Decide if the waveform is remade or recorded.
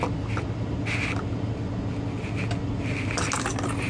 recorded